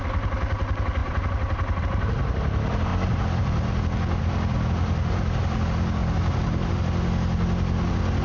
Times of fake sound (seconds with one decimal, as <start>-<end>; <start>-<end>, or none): 1.0-1.8; 6.0-6.8